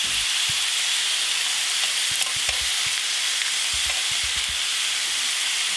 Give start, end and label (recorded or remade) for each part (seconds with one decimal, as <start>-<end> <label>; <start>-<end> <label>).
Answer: 0.0-5.8 recorded